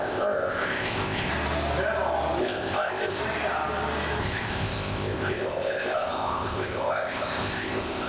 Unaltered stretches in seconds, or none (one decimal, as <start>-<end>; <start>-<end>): 1.3-2.4; 3.2-4.2

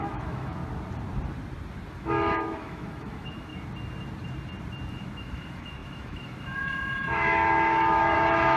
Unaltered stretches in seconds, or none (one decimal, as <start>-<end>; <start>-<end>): 0.6-1.9; 3.5-4.9

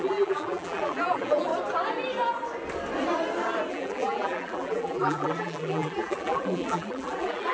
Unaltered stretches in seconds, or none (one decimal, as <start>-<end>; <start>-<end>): 1.5-3.7

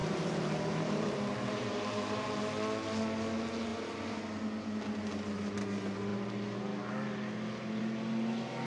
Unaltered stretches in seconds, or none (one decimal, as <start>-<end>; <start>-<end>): 2.4-8.7

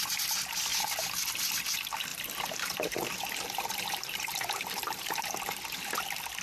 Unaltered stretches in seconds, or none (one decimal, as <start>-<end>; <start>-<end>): 0.0-2.1; 5.9-6.4

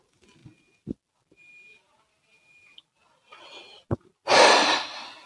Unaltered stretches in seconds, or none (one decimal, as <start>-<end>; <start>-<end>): 0.0-5.3

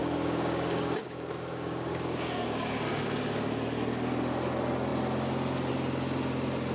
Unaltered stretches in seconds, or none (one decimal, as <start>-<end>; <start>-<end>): 3.0-6.7